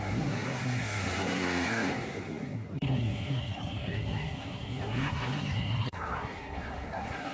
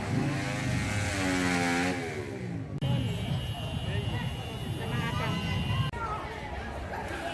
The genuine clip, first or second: second